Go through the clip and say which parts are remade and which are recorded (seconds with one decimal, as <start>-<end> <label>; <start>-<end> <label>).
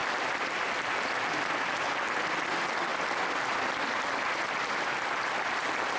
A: 0.0-6.0 recorded